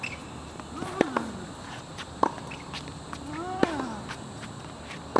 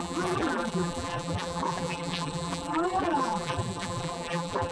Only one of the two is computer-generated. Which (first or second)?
second